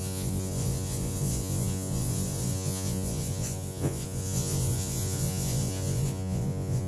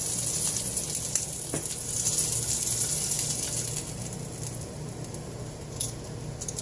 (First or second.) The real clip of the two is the second